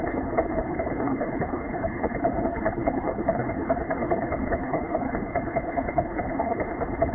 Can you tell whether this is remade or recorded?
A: remade